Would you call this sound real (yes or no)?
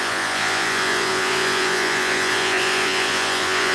no